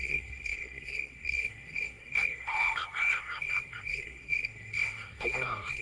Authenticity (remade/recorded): remade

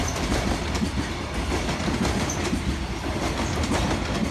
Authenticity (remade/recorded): recorded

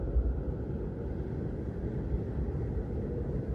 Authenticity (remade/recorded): recorded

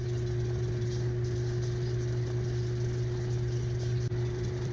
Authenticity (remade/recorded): recorded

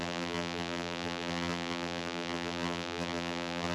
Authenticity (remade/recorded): remade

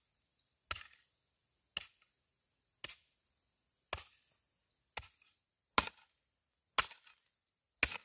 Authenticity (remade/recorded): recorded